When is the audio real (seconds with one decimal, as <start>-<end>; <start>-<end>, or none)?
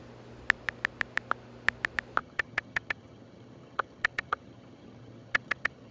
0.0-2.2